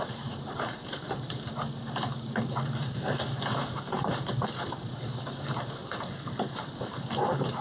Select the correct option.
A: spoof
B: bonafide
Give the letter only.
A